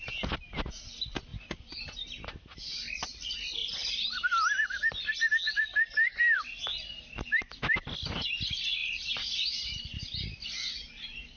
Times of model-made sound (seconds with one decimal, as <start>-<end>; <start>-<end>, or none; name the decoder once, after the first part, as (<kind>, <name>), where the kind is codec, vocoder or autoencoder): none